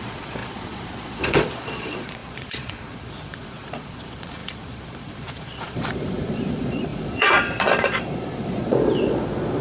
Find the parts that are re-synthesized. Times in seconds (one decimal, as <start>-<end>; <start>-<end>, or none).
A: 0.0-9.6